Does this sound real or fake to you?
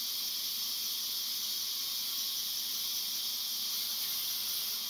real